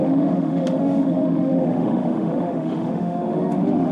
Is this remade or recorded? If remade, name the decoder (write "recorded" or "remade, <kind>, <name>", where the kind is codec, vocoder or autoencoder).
remade, autoencoder, DAC-VAE